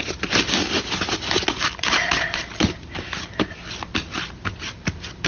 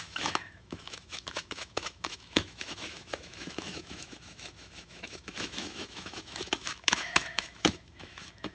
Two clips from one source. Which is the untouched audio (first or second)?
first